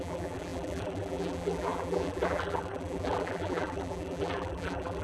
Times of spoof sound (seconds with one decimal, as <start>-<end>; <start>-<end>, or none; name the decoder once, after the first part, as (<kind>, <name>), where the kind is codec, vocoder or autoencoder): 0.0-5.0 (vocoder, BigVGAN v2)